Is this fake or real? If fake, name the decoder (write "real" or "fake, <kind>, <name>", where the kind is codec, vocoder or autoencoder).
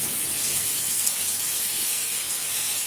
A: fake, codec, SNAC